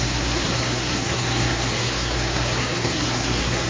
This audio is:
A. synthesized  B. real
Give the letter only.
A